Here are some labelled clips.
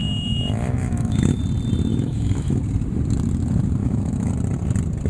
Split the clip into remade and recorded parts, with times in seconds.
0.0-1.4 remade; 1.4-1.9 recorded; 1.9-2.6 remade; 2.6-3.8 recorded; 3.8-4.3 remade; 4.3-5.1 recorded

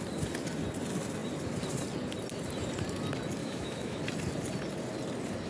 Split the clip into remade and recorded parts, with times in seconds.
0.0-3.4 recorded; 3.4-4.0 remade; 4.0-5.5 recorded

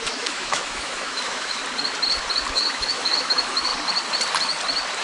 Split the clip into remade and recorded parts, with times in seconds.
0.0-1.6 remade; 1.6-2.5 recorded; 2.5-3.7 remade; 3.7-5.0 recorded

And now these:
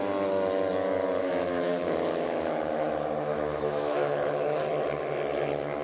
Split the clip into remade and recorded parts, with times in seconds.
0.0-1.2 recorded; 1.2-4.7 remade; 4.7-5.8 recorded

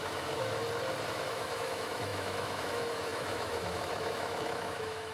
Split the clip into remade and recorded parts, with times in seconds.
0.0-0.6 remade; 0.6-1.1 recorded; 1.1-5.1 remade

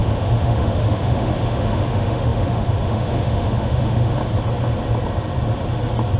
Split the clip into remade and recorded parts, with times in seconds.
0.0-4.2 remade; 4.2-6.2 recorded

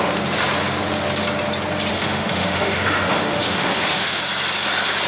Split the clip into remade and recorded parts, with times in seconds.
0.0-1.9 recorded; 1.9-4.2 remade; 4.2-5.1 recorded

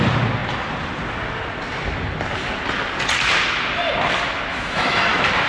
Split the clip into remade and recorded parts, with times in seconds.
0.0-4.5 recorded; 4.5-5.0 remade; 5.0-5.5 recorded